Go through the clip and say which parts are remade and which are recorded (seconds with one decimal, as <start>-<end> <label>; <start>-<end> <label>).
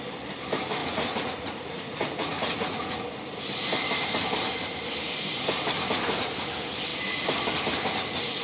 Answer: 0.0-0.8 recorded; 0.8-3.0 remade; 3.0-8.4 recorded